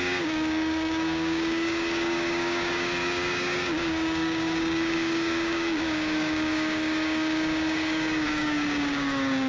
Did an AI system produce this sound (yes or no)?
yes